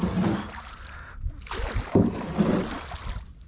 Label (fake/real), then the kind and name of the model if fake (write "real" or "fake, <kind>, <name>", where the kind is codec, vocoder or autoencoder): real